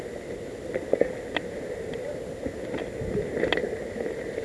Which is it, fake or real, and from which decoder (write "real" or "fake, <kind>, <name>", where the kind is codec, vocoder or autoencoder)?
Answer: real